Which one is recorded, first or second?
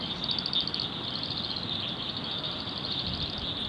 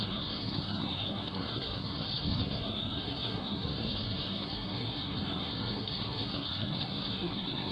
first